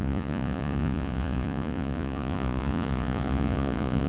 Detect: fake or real fake